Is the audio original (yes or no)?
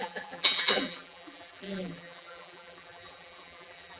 no